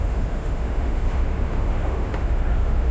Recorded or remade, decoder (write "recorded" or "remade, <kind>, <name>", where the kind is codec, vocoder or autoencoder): remade, autoencoder, DAC-VAE